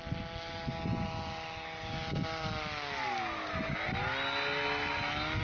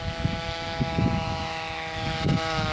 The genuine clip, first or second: first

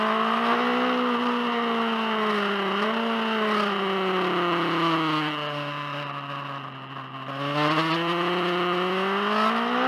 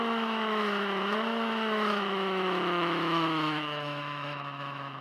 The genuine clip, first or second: first